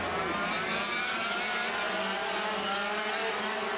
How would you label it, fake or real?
real